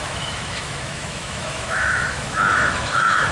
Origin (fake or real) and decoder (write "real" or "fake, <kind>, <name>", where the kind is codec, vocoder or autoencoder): fake, autoencoder, DAC-VAE